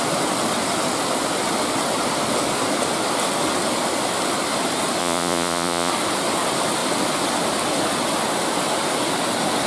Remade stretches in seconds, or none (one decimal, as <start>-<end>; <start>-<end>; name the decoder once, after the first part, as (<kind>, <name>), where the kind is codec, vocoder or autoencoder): 5.0-5.9 (vocoder, Vocos)